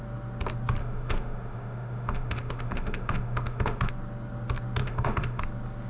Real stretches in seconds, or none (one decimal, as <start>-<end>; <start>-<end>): 0.0-0.8; 3.9-4.8; 5.4-5.9